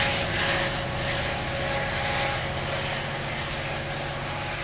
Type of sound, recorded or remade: recorded